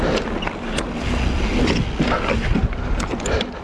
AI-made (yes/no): no